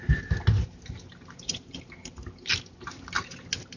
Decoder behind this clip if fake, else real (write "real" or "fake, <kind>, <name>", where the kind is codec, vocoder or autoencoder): real